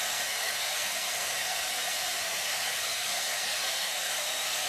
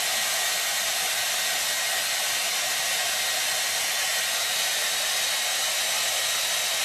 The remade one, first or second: first